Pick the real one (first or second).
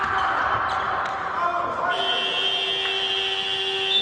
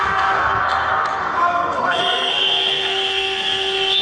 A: first